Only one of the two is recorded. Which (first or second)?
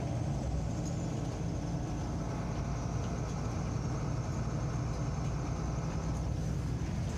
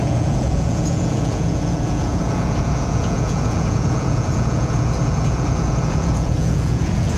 first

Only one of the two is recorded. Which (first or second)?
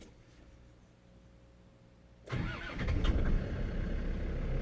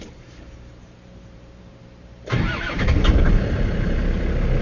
first